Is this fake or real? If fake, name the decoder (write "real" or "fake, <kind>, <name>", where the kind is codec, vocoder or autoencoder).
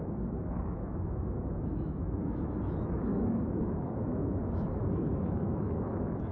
fake, autoencoder, DAC-VAE